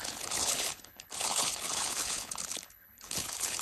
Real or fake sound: fake